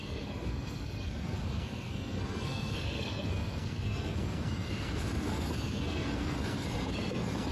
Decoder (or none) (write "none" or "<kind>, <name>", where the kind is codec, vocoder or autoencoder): codec, SNAC